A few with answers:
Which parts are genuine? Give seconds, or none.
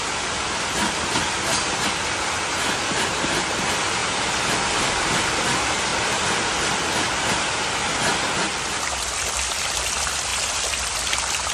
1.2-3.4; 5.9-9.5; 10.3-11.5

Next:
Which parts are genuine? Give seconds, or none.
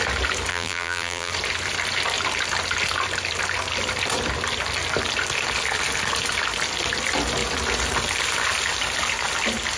0.0-0.5; 1.3-9.8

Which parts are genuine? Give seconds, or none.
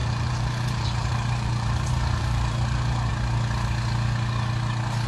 3.1-5.1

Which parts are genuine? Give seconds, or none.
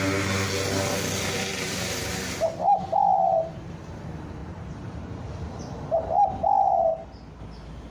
0.0-1.5; 2.1-4.4; 5.6-7.9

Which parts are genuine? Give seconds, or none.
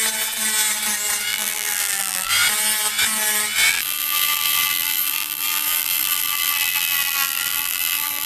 0.0-1.3; 2.3-3.7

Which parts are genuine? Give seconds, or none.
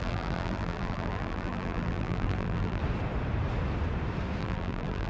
2.8-4.4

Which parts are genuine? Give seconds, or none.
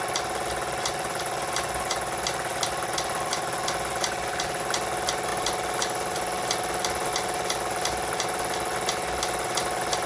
0.0-10.1